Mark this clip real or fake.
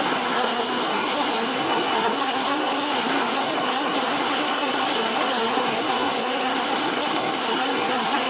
fake